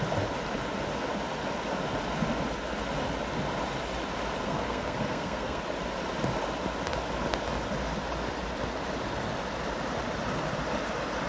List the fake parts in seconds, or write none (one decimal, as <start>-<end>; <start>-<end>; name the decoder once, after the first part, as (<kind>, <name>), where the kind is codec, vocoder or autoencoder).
4.4-5.6 (codec, SNAC)